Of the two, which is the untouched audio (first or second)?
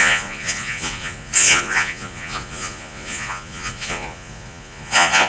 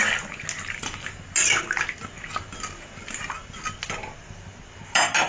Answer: second